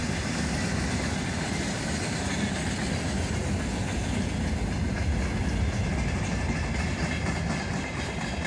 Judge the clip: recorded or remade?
recorded